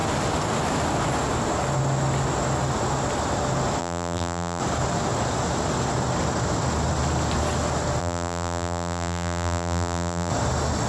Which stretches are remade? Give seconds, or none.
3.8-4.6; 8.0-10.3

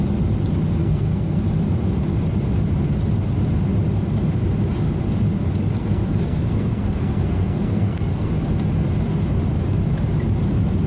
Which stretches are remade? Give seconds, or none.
0.8-1.4; 5.8-8.3

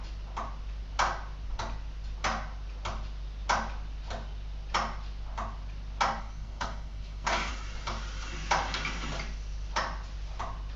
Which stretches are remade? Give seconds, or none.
6.2-7.5

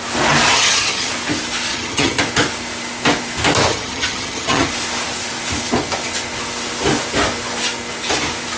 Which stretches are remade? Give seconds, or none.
0.5-1.1; 1.7-2.2; 3.7-4.7

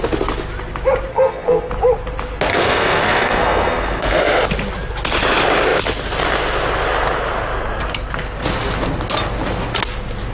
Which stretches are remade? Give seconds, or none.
1.1-1.7; 2.5-4.2

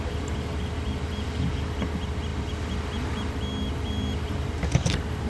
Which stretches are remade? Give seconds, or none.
0.0-2.3; 3.7-5.3

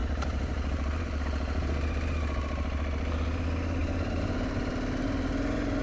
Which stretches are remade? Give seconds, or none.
0.0-1.2; 3.8-4.7